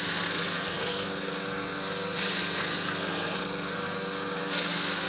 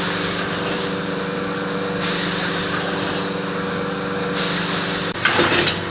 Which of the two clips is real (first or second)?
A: second